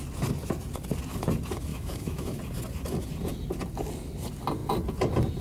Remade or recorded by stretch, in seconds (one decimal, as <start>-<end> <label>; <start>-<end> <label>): 0.0-1.7 recorded; 1.7-2.4 remade; 2.4-5.4 recorded